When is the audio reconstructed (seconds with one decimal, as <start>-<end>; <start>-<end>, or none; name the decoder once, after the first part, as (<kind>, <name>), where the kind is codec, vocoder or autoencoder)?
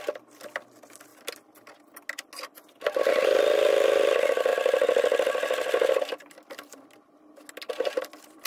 none